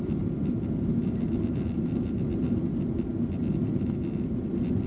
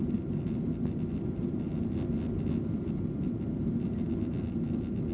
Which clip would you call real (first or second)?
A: second